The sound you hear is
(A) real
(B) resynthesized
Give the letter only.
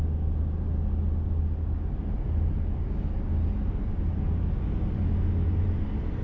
A